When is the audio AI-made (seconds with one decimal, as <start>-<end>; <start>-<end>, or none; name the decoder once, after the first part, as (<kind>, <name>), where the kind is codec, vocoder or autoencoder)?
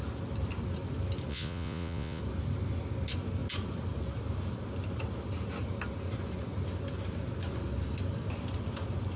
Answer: 1.3-2.2 (vocoder, Vocos)